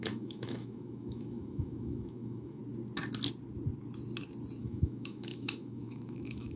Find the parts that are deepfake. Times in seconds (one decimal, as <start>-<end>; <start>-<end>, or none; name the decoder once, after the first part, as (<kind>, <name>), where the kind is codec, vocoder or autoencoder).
0.0-2.6 (autoencoder, DAC-VAE); 4.6-6.6